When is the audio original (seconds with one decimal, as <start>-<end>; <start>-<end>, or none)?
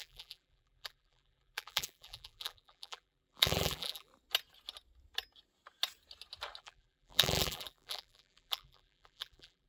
4.1-6.6